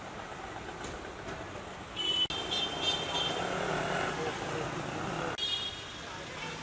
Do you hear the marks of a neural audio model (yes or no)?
no